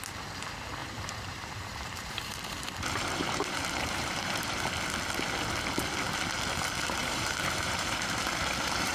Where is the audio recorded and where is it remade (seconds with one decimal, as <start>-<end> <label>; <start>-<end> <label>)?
0.0-0.8 recorded; 0.8-4.6 remade; 4.6-7.0 recorded; 7.0-8.9 remade

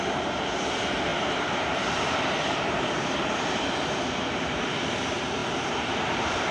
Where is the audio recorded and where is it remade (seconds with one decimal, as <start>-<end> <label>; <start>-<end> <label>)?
0.0-6.5 remade

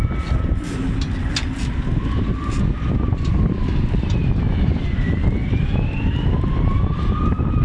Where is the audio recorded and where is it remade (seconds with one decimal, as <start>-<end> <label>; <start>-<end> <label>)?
0.0-5.4 recorded; 5.4-7.1 remade; 7.1-7.6 recorded

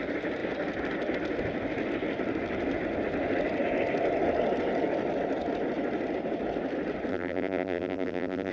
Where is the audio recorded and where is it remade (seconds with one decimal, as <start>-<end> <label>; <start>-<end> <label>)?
0.0-7.1 recorded; 7.1-8.5 remade

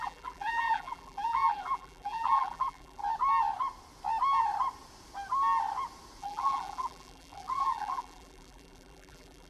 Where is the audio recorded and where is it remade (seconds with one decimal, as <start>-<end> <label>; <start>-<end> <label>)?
0.0-3.0 remade; 3.0-6.2 recorded; 6.2-9.5 remade

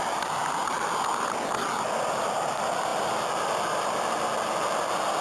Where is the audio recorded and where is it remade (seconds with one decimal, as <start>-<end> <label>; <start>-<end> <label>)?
0.0-5.2 recorded

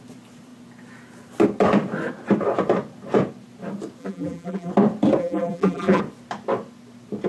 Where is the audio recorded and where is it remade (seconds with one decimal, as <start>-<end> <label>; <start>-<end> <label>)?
0.0-4.0 recorded; 4.0-4.7 remade; 4.7-5.2 recorded; 5.2-6.0 remade; 6.0-7.3 recorded